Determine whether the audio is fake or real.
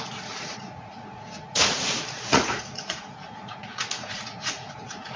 fake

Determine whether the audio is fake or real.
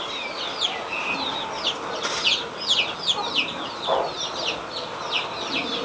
real